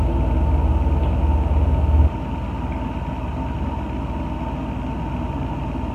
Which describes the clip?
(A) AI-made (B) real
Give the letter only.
B